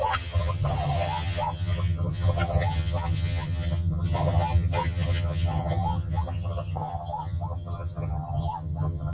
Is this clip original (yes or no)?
no